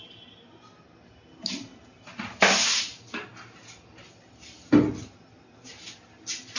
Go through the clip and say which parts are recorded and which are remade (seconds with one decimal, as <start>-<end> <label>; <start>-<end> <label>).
0.0-6.6 recorded